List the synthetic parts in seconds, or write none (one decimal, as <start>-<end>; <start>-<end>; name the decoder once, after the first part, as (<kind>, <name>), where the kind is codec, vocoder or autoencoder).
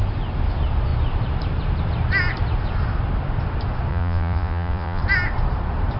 3.9-5.0 (vocoder, Vocos)